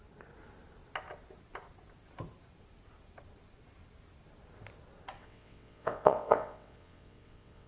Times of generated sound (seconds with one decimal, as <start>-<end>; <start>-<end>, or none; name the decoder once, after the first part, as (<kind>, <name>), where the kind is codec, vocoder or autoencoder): 5.2-7.7 (vocoder, WaveNeXt)